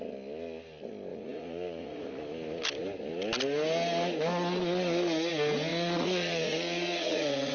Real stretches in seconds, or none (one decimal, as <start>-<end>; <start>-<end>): 0.0-1.1; 2.1-5.7